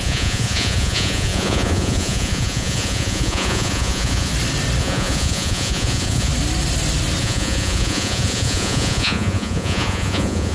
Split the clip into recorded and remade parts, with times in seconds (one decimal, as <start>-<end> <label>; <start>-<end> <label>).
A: 0.0-4.3 remade; 4.3-4.8 recorded; 4.8-6.3 remade; 6.3-7.2 recorded; 7.2-10.5 remade